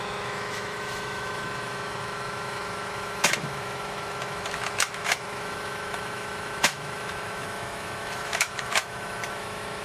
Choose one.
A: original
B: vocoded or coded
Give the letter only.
B